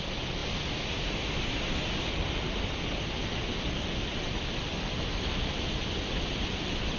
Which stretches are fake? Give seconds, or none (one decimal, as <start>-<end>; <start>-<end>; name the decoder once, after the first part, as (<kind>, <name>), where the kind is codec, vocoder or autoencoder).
4.0-5.1 (vocoder, BigVGAN v2)